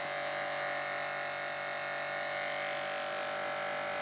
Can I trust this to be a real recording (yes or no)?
yes